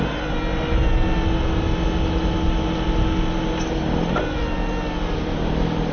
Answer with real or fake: real